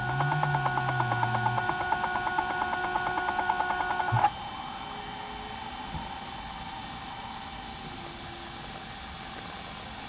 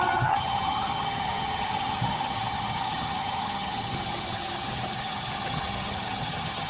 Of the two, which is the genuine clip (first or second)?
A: first